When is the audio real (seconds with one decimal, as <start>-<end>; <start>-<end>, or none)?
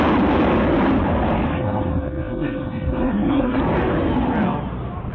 0.0-1.5; 3.6-5.1